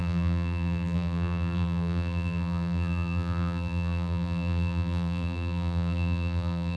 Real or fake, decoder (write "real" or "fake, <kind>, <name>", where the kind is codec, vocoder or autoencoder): fake, vocoder, BigVGAN v2